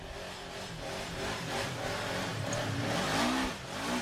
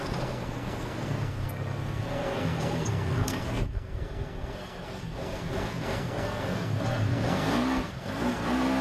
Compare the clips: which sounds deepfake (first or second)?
second